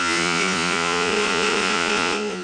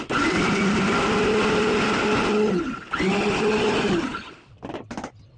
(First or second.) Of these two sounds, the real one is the second